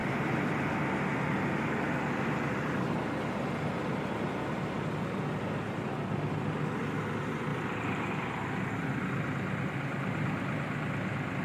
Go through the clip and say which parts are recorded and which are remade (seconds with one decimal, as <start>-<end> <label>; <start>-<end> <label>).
0.0-11.4 recorded